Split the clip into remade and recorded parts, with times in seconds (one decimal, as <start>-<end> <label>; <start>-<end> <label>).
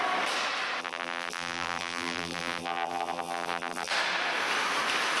0.0-0.8 recorded; 0.8-3.9 remade; 3.9-5.2 recorded